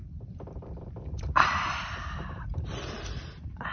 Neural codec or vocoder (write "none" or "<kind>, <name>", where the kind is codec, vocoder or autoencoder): none